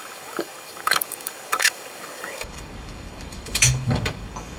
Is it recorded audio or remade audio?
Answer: remade